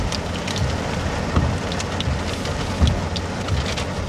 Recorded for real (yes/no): yes